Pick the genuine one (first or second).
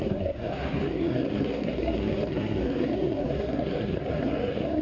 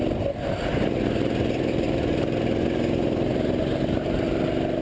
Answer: second